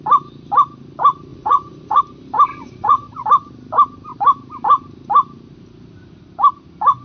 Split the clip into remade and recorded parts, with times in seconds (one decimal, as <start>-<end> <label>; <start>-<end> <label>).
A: 0.0-1.3 recorded; 1.3-2.0 remade; 2.0-2.5 recorded; 2.5-3.1 remade; 3.1-7.0 recorded